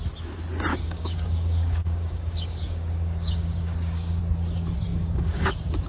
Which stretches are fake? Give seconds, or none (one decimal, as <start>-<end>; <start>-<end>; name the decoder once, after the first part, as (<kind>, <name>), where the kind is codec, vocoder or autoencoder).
0.7-4.2 (codec, DAC); 4.9-5.5